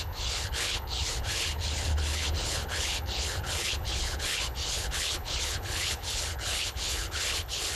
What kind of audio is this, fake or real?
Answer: fake